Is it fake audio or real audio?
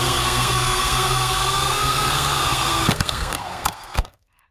fake